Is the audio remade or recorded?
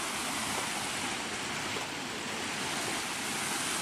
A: recorded